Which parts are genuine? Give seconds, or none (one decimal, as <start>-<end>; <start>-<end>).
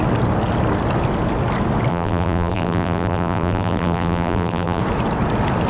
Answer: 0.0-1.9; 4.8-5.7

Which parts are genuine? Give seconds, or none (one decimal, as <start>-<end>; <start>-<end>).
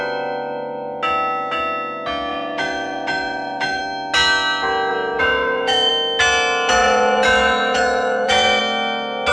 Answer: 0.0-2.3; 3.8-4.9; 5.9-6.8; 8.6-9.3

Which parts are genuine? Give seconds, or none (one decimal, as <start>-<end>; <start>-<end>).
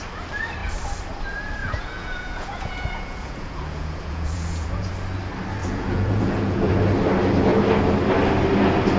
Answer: 0.0-1.6; 4.9-5.6; 6.7-9.0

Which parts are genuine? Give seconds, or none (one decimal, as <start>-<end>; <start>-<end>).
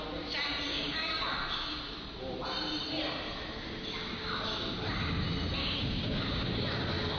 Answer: 0.0-0.7; 1.3-5.6; 6.5-7.2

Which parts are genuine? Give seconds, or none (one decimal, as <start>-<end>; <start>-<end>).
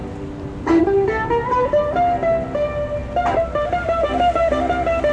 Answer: 0.0-5.1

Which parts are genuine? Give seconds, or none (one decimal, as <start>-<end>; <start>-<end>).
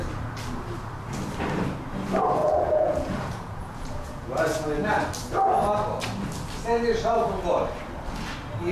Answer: 0.0-2.4; 5.0-8.7